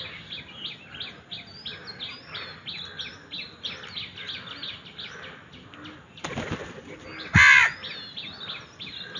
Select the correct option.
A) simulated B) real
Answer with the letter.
B